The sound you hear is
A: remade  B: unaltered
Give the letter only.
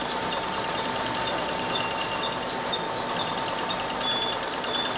B